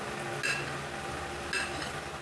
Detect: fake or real real